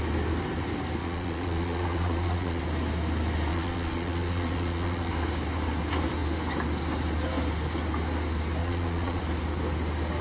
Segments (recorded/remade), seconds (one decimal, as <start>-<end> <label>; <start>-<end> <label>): 0.0-1.0 recorded; 1.0-2.6 remade; 2.6-3.5 recorded; 3.5-5.1 remade; 5.1-8.6 recorded; 8.6-9.2 remade; 9.2-10.2 recorded